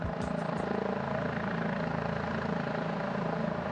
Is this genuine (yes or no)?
yes